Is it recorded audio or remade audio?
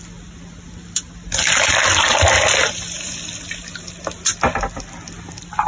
recorded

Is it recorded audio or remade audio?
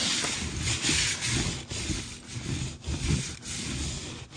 recorded